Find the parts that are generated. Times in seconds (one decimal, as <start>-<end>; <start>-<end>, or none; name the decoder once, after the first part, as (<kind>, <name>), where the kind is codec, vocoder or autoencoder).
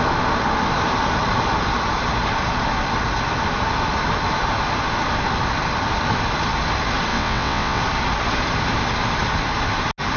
7.1-7.8 (vocoder, WaveNeXt)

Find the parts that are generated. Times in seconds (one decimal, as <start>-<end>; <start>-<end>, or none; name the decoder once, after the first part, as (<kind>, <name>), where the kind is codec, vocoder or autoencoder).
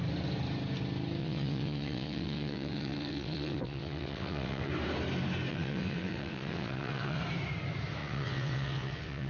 1.2-4.7 (vocoder, WaveNeXt); 5.5-7.2; 8.0-9.3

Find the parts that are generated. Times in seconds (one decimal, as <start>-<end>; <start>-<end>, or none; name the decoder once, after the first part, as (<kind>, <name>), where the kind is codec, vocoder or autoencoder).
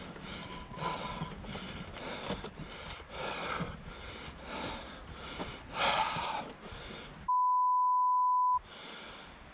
0.4-1.3 (vocoder, WaveNeXt)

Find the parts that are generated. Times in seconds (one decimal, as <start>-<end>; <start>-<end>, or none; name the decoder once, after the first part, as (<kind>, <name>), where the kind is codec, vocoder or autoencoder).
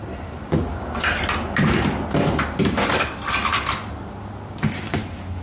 none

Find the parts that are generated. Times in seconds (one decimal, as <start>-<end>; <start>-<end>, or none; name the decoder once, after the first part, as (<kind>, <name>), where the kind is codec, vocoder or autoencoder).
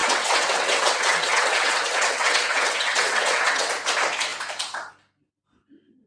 0.0-3.7 (vocoder, WaveNeXt)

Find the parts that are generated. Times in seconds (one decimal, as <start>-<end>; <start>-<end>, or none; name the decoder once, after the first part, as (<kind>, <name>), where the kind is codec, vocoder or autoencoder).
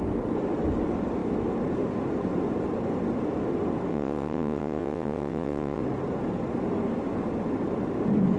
3.9-5.8 (vocoder, WaveNeXt)